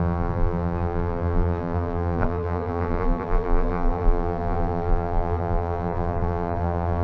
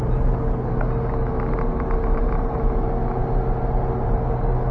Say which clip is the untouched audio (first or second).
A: second